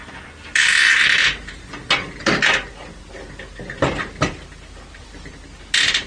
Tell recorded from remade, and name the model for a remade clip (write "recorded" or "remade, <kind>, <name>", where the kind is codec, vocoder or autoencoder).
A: recorded